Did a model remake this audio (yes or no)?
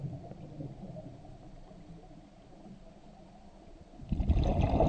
no